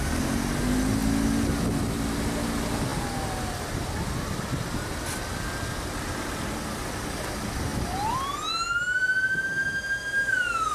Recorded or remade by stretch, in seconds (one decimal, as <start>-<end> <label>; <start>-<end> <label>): 0.0-10.7 recorded